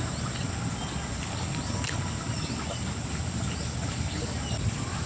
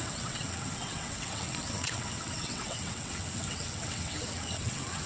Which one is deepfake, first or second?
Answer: second